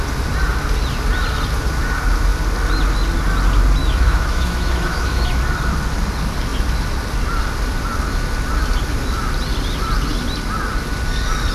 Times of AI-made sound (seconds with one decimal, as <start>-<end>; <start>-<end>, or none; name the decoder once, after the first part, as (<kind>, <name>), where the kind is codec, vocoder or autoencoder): 3.8-5.4 (autoencoder, DAC-VAE)